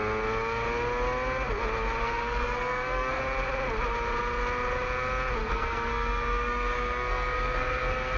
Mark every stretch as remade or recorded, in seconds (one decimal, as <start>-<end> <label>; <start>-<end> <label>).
0.0-2.0 recorded; 2.0-3.2 remade; 3.2-5.4 recorded; 5.4-8.2 remade